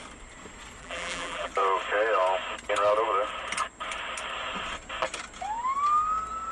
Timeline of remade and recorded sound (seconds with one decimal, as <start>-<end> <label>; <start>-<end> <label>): 0.0-0.8 recorded; 0.8-1.5 remade; 1.5-6.5 recorded